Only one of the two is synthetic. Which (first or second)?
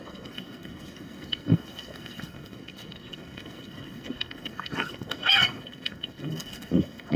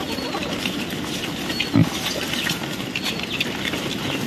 first